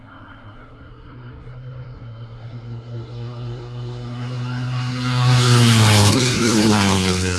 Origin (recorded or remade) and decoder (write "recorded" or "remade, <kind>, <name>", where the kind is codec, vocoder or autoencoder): remade, codec, SNAC